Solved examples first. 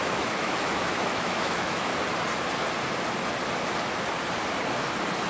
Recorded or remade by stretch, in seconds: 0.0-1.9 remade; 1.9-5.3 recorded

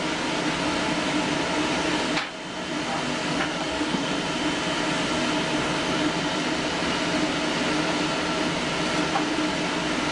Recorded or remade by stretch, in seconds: 0.0-3.2 recorded; 3.2-4.1 remade; 4.1-10.1 recorded

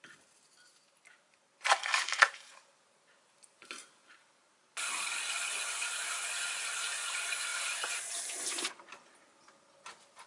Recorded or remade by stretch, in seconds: 0.0-0.7 recorded; 0.7-4.5 remade; 4.5-5.8 recorded; 5.8-6.3 remade; 6.3-7.5 recorded; 7.5-8.8 remade; 8.8-10.3 recorded

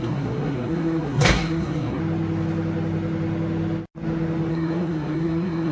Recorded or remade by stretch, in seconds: 0.0-2.0 remade; 2.0-4.5 recorded; 4.5-5.7 remade

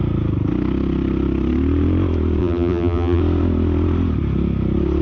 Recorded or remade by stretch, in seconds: 0.0-2.4 recorded; 2.4-3.2 remade; 3.2-5.0 recorded

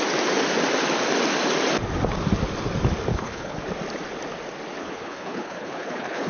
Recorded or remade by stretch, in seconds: 0.0-3.1 recorded; 3.1-3.6 remade; 3.6-4.8 recorded; 4.8-6.3 remade

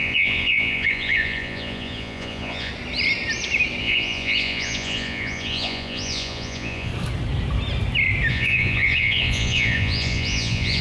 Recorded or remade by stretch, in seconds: 0.0-2.7 remade; 2.7-3.8 recorded; 3.8-6.9 remade; 6.9-8.3 recorded; 8.3-10.8 remade